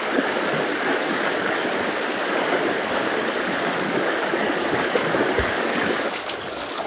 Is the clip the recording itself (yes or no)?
no